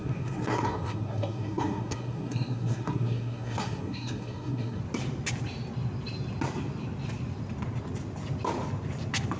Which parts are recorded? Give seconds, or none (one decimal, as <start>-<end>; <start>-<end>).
4.8-9.4